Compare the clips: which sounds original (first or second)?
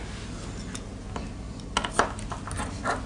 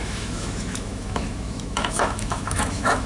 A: first